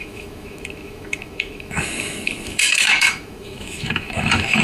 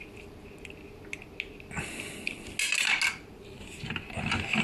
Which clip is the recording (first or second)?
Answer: second